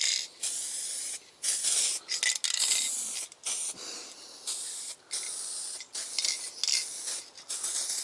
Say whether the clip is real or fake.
real